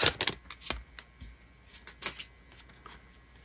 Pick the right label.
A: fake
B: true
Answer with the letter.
B